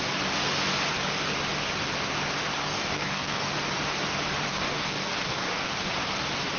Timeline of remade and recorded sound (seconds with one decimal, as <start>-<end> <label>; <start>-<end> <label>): 0.0-2.6 recorded; 2.6-3.5 remade; 3.5-4.5 recorded; 4.5-5.9 remade; 5.9-6.6 recorded